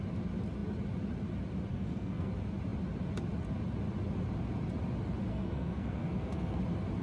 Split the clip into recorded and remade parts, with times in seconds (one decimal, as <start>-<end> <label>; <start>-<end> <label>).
0.0-1.7 recorded; 1.7-2.3 remade; 2.3-5.3 recorded; 5.3-6.6 remade; 6.6-7.0 recorded